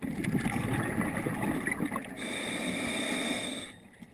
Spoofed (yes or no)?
no